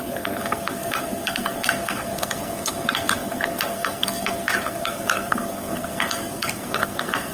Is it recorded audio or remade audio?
remade